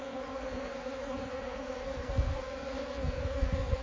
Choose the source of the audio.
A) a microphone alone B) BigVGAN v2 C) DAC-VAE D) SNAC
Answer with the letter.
D